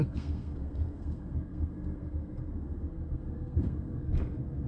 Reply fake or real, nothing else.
fake